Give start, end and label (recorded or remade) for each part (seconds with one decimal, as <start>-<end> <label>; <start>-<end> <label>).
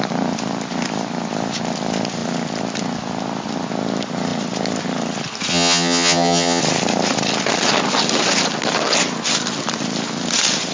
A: 0.0-5.5 recorded; 5.5-6.6 remade; 6.6-10.7 recorded